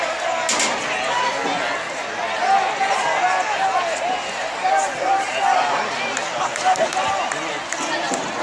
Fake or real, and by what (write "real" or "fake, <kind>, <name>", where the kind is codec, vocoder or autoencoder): real